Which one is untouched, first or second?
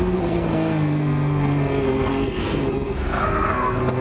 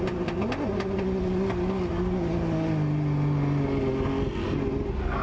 second